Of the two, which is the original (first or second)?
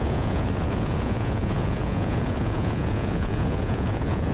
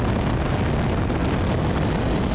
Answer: second